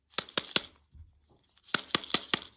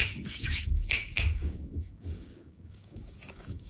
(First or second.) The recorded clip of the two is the first